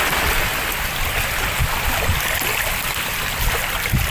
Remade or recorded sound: recorded